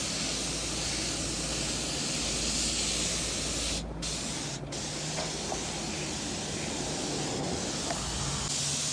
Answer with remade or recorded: recorded